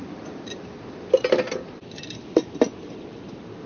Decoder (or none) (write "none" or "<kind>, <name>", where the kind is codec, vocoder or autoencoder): none